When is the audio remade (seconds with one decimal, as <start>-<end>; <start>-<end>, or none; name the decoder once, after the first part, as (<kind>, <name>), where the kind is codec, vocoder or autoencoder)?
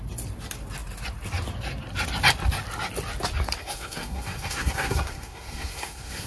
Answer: 3.6-6.3 (codec, SNAC)